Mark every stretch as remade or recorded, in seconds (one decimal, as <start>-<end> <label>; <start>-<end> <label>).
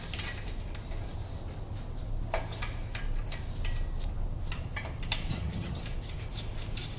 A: 0.0-5.3 recorded; 5.3-5.8 remade; 5.8-7.0 recorded